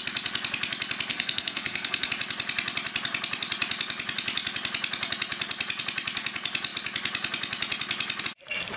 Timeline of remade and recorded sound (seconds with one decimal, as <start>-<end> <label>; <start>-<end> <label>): 0.0-1.1 recorded; 1.1-2.1 remade; 2.1-8.8 recorded